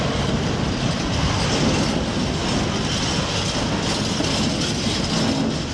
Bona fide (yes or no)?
yes